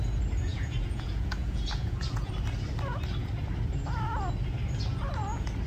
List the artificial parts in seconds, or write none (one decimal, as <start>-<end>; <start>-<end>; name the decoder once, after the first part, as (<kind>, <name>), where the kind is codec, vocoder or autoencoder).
0.5-2.3 (vocoder, Vocos)